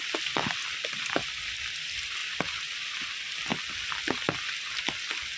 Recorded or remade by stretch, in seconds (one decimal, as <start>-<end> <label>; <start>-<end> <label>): 0.0-5.4 recorded